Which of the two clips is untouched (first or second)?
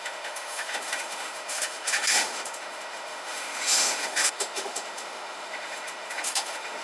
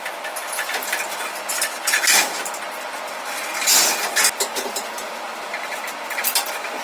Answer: second